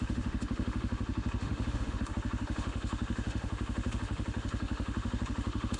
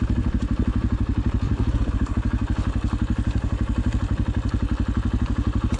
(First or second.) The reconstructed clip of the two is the first